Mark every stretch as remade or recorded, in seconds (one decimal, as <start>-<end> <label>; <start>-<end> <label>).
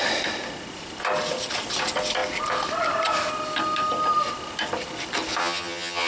0.0-5.4 recorded; 5.4-6.1 remade